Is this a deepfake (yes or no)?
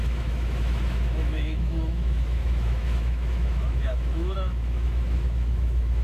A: yes